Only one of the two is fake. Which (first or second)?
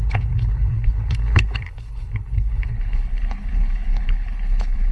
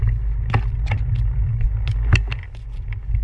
first